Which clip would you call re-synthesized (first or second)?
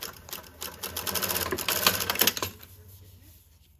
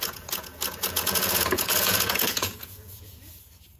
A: second